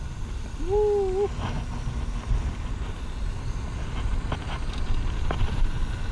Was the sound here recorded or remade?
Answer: recorded